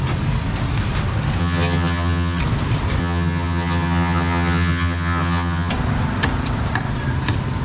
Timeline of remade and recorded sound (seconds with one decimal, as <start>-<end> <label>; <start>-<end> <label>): 0.0-1.4 recorded; 1.4-2.4 remade; 2.4-3.0 recorded; 3.0-5.7 remade; 5.7-7.6 recorded